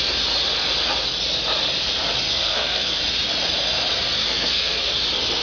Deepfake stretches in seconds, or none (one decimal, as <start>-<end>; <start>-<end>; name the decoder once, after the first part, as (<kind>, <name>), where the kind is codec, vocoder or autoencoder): 2.3-3.0 (codec, SNAC); 4.2-4.9